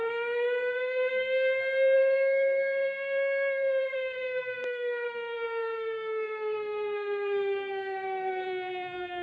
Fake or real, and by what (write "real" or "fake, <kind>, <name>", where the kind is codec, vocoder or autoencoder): fake, codec, SNAC